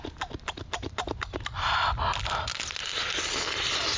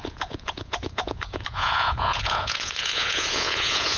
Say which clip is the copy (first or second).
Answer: second